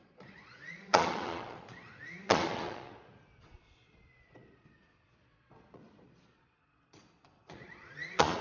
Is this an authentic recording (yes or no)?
no